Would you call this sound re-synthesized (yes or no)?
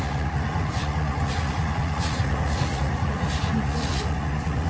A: yes